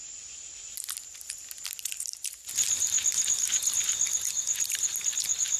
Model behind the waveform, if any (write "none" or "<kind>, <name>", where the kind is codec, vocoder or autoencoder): none